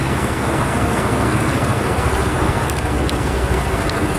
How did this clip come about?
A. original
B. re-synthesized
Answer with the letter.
B